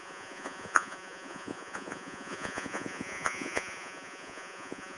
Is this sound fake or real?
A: fake